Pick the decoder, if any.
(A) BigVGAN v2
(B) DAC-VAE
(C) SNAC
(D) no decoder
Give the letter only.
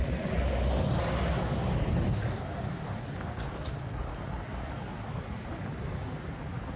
D